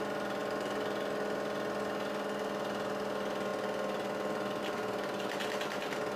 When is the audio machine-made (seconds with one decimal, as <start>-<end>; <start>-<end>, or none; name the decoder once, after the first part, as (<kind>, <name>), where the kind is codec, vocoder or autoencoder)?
none